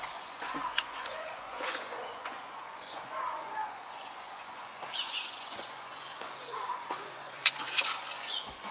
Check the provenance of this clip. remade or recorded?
remade